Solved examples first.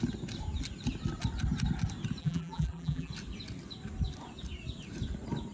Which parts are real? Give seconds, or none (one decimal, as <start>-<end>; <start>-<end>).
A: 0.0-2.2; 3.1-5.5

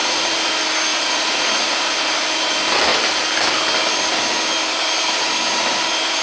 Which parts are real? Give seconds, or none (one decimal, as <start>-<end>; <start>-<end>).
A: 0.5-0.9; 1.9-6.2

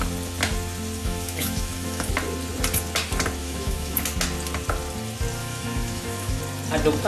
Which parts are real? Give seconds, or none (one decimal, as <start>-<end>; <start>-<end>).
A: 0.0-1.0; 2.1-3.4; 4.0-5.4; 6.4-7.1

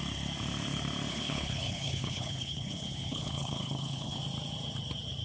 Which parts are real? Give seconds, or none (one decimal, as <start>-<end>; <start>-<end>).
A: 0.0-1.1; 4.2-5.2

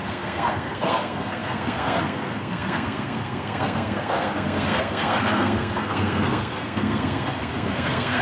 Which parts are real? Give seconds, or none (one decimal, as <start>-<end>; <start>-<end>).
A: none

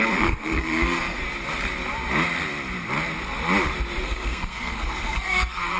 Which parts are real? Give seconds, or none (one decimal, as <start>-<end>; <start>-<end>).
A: 1.2-4.0

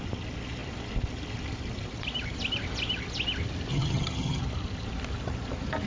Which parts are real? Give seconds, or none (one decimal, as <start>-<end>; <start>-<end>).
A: 0.0-3.7; 4.4-5.9

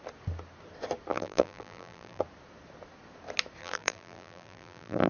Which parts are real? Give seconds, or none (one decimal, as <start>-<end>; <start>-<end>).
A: 0.0-1.1; 2.2-3.6